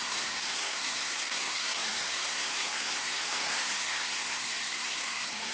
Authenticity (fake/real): fake